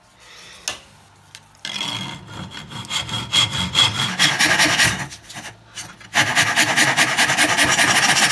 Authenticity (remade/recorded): recorded